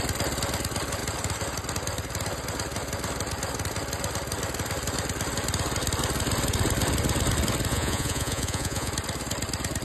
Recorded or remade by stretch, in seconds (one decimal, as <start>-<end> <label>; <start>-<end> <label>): 0.0-7.7 recorded; 7.7-8.9 remade; 8.9-9.8 recorded